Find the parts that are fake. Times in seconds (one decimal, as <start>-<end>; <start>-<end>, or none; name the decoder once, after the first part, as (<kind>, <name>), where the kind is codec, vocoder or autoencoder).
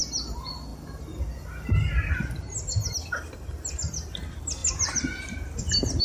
none